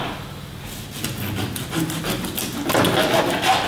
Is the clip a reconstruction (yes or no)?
no